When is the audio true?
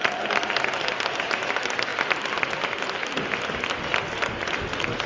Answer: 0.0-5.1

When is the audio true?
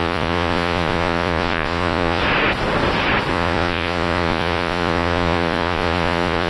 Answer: 2.2-3.3